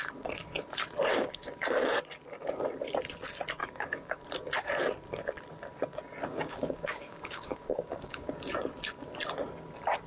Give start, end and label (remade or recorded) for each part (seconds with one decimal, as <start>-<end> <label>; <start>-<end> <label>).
0.0-1.1 recorded; 1.1-1.8 remade; 1.8-3.6 recorded; 3.6-4.2 remade; 4.2-6.3 recorded; 6.3-8.3 remade; 8.3-10.1 recorded